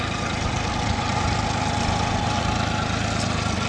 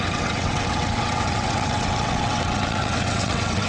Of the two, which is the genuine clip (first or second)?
first